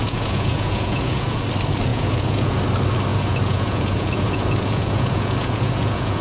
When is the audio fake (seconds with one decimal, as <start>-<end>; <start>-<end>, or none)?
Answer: 0.0-1.4; 1.9-2.6; 3.1-6.2